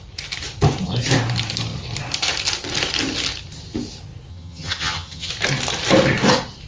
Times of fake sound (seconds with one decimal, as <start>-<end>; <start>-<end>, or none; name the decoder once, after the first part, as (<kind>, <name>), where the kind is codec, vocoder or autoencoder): 4.3-5.3 (vocoder, HiFi-GAN)